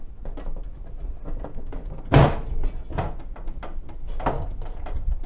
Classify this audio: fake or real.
real